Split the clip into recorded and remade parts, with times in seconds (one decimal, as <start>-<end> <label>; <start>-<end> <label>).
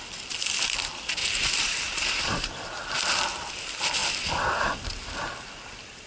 0.0-1.2 recorded; 1.2-1.8 remade; 1.8-6.1 recorded